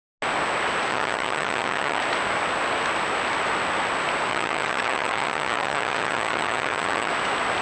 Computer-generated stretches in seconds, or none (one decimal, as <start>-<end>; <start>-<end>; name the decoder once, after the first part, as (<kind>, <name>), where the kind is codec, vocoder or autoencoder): 0.9-2.0 (vocoder, HiFi-GAN); 4.3-7.1